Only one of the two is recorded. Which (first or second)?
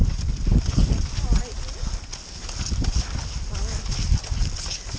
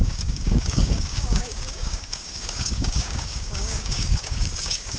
first